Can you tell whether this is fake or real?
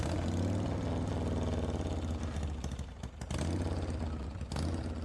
real